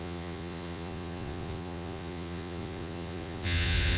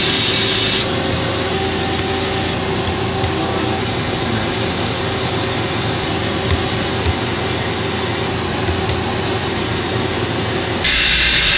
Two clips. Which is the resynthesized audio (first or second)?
first